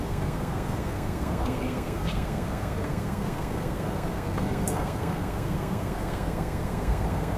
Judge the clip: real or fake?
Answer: fake